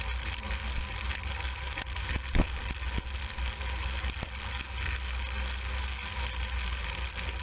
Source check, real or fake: real